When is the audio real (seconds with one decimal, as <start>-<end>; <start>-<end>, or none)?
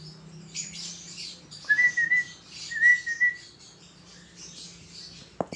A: 0.0-5.6